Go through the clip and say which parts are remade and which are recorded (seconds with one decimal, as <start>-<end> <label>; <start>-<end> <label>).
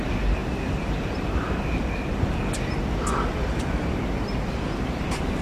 0.0-5.4 recorded